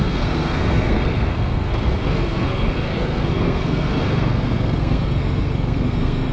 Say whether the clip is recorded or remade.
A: remade